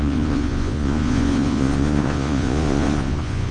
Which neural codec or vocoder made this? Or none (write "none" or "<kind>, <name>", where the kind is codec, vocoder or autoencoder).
vocoder, Vocos